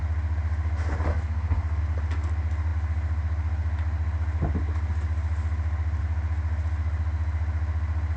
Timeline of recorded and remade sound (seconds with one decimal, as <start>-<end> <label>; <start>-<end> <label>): 0.0-1.1 recorded; 1.1-1.8 remade; 1.8-8.2 recorded